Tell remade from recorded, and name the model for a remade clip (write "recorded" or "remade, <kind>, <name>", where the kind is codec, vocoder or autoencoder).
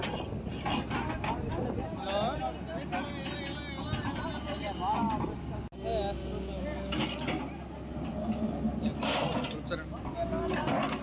recorded